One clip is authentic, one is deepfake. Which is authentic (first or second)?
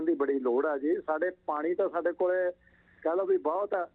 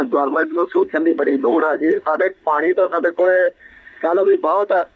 first